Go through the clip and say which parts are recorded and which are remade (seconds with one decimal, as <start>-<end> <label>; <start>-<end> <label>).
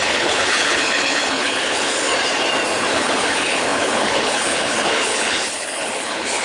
0.0-2.1 remade; 2.1-2.9 recorded; 2.9-6.4 remade